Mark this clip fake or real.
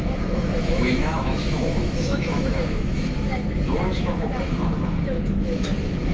fake